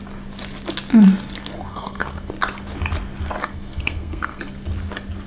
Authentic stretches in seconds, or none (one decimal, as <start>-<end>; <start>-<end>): 0.0-1.7; 2.3-3.4; 4.4-5.3